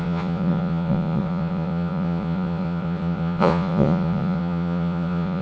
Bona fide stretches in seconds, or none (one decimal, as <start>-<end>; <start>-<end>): none